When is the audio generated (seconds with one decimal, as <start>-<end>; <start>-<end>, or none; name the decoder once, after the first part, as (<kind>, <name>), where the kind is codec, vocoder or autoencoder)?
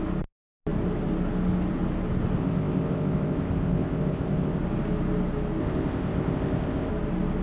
2.4-4.6 (codec, ZipCodec); 5.6-6.9